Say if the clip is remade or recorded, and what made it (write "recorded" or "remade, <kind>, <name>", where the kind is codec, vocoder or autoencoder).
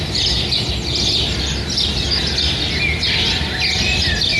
recorded